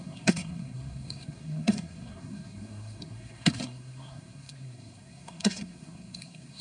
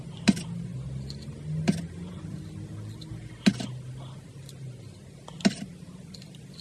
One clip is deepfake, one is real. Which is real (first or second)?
second